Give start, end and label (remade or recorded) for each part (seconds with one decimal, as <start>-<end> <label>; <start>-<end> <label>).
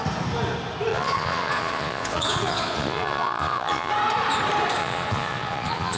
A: 0.0-0.9 recorded; 0.9-3.9 remade; 3.9-4.8 recorded; 4.8-6.0 remade